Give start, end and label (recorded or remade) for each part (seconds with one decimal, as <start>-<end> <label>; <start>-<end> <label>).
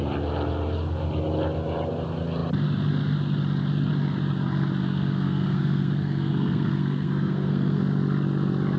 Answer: 0.0-4.8 recorded; 4.8-7.8 remade; 7.8-8.8 recorded